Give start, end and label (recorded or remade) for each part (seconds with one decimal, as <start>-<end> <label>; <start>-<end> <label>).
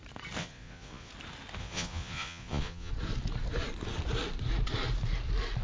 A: 0.0-0.4 recorded; 0.4-1.1 remade; 1.1-1.6 recorded; 1.6-2.9 remade; 2.9-5.6 recorded